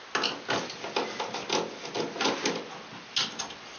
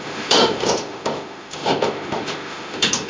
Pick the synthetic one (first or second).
second